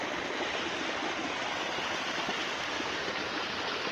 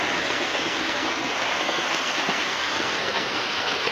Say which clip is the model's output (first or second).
second